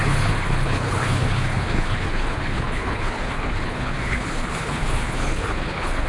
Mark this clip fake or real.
fake